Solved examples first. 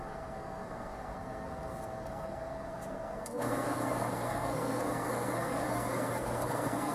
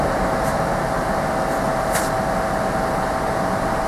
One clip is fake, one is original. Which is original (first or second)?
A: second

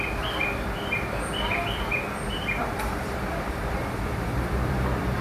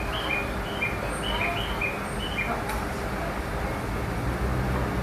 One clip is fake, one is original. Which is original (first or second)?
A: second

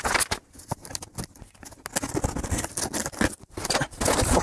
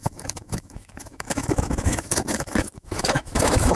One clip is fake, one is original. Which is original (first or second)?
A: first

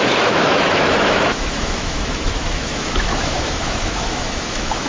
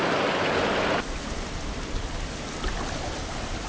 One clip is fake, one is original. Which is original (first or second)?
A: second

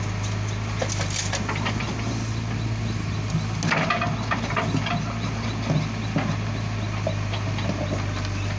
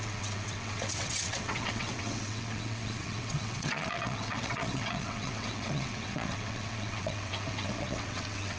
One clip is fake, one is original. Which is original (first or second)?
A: first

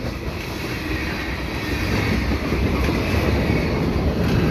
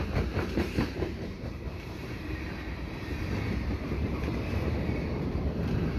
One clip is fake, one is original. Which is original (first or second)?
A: first